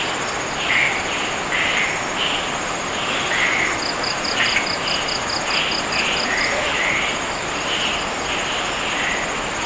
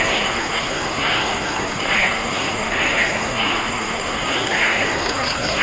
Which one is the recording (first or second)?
first